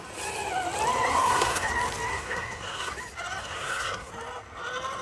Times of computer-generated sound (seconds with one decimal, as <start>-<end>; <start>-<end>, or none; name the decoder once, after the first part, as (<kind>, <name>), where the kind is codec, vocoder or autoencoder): 1.1-1.7 (codec, SNAC); 2.1-2.9; 3.4-4.1